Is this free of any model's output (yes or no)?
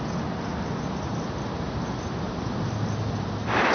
yes